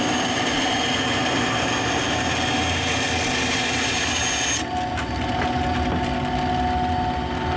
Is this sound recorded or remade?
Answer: recorded